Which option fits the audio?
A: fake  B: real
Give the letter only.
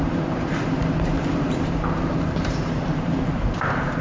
A